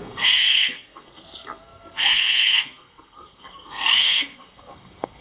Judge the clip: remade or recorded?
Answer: remade